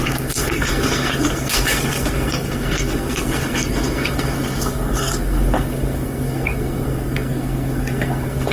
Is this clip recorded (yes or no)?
no